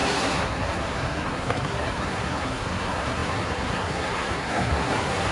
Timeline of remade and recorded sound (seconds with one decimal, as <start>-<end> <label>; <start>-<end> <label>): 0.0-5.3 remade